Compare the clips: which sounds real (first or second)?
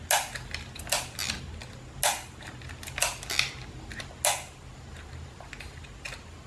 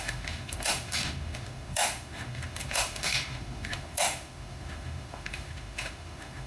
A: first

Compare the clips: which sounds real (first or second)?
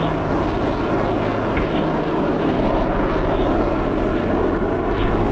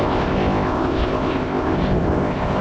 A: first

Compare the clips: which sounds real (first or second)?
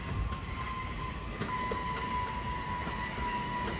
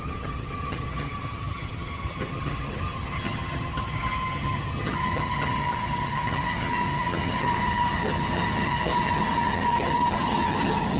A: first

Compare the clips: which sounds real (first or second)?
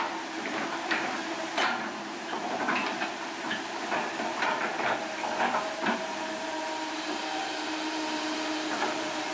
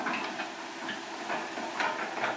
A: second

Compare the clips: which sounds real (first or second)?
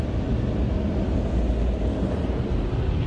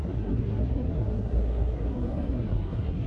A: first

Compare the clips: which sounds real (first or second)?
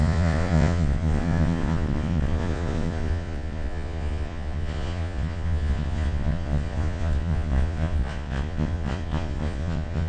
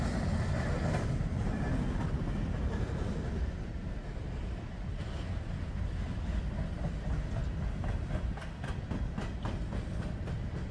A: second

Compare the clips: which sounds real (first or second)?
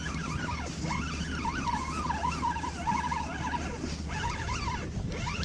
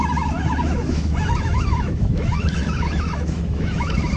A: first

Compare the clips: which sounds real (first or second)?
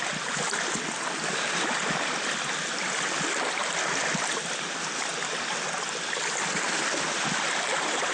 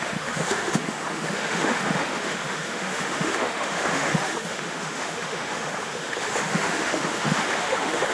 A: first